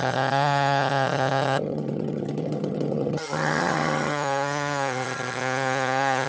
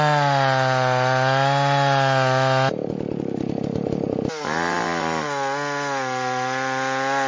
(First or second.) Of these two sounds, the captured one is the second